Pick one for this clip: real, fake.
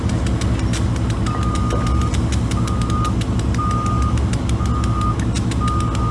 real